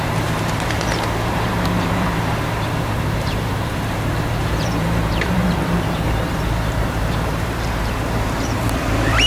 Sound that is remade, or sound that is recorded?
remade